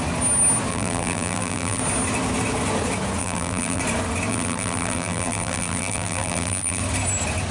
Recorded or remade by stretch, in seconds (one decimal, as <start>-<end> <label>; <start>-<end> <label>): 0.0-0.7 recorded; 0.7-1.8 remade; 1.8-3.2 recorded; 3.2-3.8 remade; 3.8-4.3 recorded; 4.3-6.8 remade; 6.8-7.5 recorded